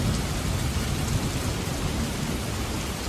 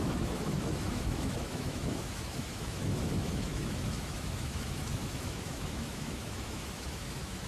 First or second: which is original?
first